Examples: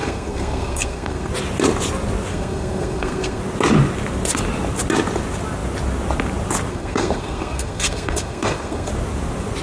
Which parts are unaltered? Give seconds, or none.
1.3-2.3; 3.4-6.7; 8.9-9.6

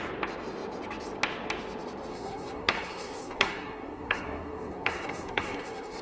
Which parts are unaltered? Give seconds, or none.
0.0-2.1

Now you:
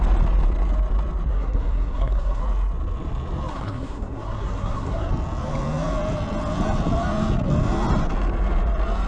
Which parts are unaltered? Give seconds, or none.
0.0-1.3; 2.4-3.5; 5.1-9.1